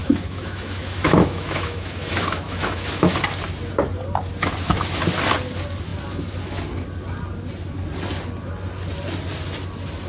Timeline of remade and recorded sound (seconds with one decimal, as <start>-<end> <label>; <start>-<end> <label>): 0.0-3.2 remade; 3.2-10.1 recorded